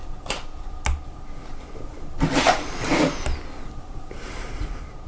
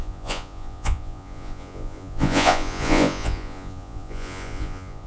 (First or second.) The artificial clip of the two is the second